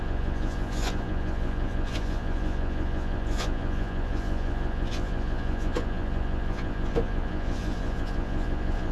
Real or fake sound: fake